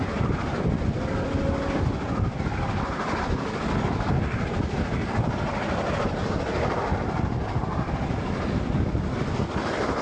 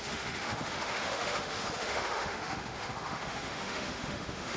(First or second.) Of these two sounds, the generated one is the second